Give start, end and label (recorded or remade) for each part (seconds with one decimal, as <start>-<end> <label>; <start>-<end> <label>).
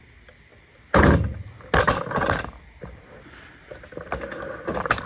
0.0-5.1 recorded